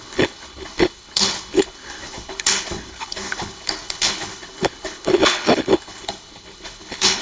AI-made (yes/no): yes